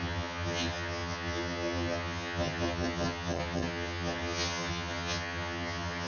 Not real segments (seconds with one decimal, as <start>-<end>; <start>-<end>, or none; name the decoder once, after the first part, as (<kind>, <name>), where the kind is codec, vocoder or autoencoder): 0.0-6.1 (vocoder, HiFi-GAN)